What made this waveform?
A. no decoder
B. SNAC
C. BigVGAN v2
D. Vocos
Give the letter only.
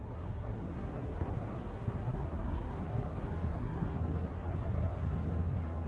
B